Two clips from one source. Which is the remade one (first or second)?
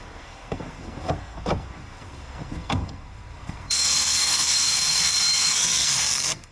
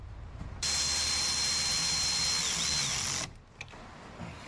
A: first